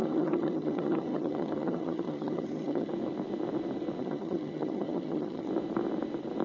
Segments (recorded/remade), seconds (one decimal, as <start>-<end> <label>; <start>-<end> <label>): 0.0-2.9 remade; 2.9-4.0 recorded; 4.0-5.5 remade; 5.5-6.4 recorded